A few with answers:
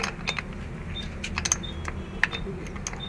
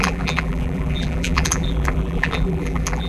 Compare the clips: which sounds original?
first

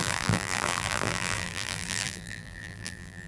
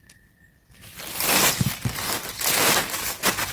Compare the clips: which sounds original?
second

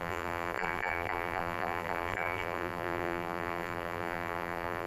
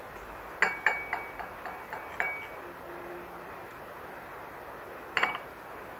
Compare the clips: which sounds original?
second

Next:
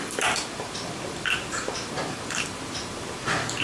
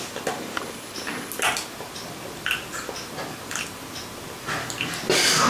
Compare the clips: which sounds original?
second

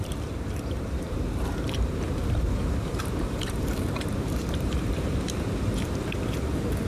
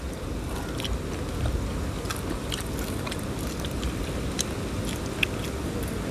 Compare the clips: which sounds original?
second